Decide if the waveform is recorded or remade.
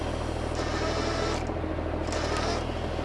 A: recorded